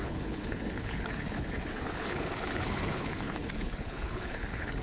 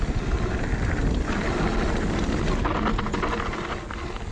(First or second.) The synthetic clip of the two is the first